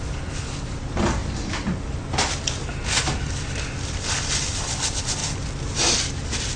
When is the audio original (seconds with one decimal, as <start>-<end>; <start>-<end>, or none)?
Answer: 1.2-3.8; 5.2-5.9